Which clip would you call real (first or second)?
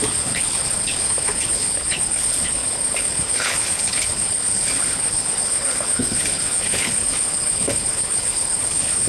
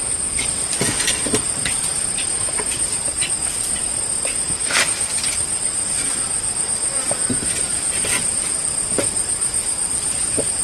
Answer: second